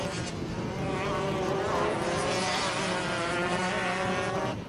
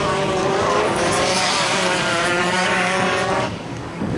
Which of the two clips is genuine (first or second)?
first